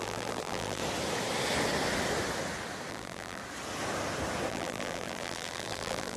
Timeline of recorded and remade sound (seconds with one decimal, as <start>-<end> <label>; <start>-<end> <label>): 0.0-0.8 remade; 0.8-2.9 recorded; 2.9-3.4 remade; 3.4-4.5 recorded; 4.5-6.2 remade